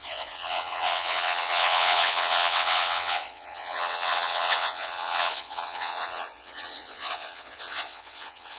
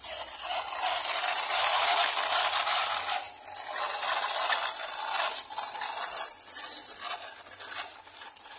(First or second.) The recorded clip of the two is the second